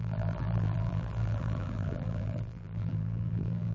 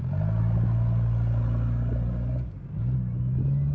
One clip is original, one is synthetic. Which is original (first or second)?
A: second